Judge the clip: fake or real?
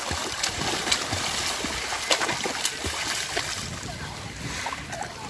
real